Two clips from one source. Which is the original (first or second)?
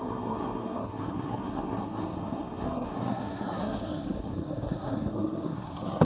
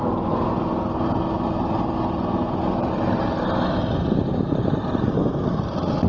second